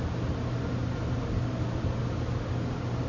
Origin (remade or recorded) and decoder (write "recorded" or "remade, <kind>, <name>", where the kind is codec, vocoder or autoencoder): recorded